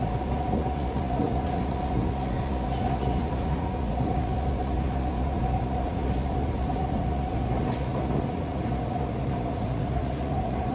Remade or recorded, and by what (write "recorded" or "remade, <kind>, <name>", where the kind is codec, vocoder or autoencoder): remade, vocoder, Vocos